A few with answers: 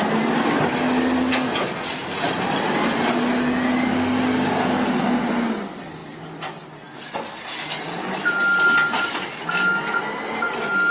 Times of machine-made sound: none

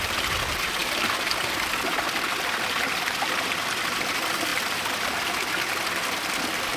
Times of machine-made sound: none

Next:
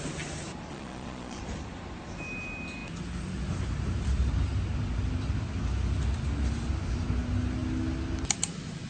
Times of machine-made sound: 0.7-1.4 (vocoder, Vocos)

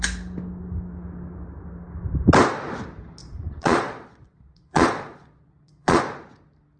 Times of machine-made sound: 3.2-6.0 (vocoder, Vocos)